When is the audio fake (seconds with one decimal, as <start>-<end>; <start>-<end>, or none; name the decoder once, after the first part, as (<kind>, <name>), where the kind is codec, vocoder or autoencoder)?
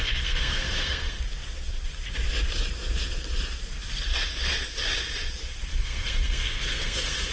0.0-1.2 (codec, SNAC); 5.7-7.3